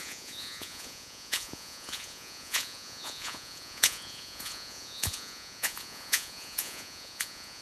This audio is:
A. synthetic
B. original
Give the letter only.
A